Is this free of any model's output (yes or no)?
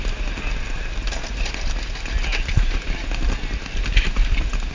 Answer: yes